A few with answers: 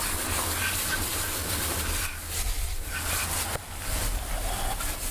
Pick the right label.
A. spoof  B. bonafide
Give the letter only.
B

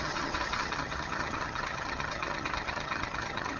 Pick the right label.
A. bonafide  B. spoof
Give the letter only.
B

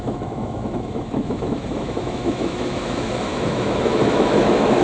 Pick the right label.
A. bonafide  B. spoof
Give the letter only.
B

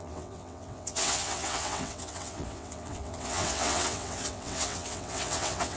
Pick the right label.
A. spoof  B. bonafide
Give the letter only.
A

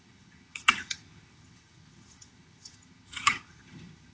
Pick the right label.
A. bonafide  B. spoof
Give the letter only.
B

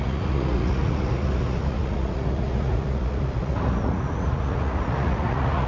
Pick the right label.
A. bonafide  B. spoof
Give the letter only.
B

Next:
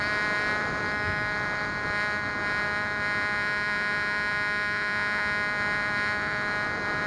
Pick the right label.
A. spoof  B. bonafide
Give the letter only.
B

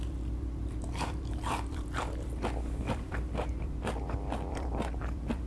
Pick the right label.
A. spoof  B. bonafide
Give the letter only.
A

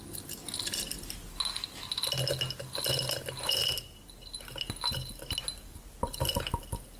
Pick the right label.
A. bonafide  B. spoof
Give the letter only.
A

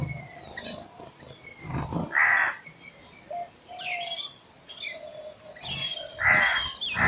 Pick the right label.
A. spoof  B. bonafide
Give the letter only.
B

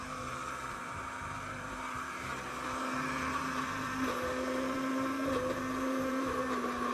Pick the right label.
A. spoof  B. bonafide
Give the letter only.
A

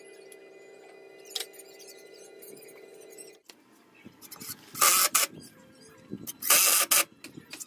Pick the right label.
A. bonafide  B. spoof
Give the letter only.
A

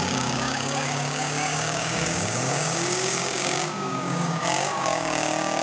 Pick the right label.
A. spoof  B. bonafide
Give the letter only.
A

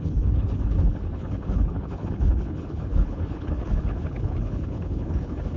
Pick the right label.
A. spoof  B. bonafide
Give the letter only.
A